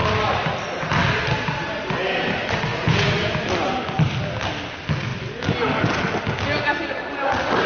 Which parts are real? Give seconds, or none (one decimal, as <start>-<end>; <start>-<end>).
0.0-2.7; 3.3-7.7